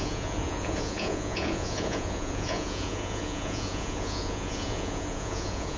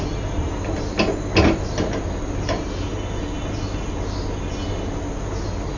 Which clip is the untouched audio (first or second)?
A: second